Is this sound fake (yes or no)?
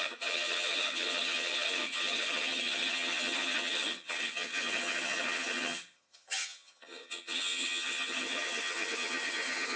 yes